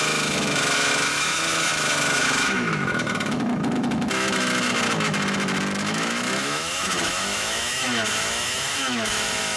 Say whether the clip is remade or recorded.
remade